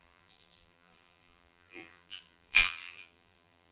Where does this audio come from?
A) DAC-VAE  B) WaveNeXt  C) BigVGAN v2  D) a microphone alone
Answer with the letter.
C